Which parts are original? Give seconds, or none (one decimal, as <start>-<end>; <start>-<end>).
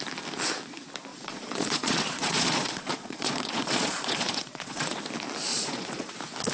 0.0-1.1; 5.0-5.5; 6.1-6.5